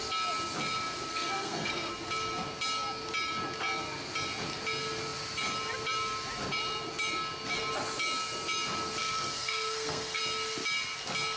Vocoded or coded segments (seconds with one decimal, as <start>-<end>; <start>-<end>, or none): 1.1-1.9; 9.0-10.2